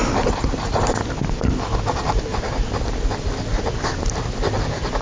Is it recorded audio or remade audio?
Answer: recorded